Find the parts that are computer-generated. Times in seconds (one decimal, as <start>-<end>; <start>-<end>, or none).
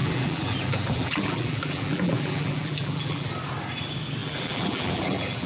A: 0.0-3.3; 4.2-5.5